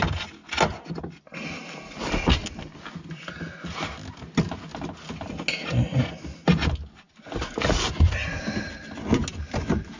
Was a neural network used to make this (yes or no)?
no